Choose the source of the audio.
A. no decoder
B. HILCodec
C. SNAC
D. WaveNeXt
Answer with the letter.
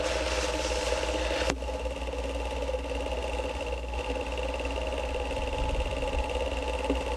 A